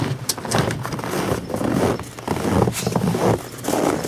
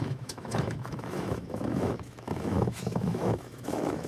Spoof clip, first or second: second